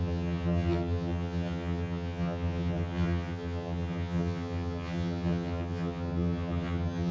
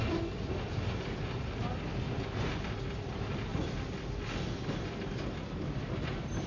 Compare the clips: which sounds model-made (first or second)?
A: first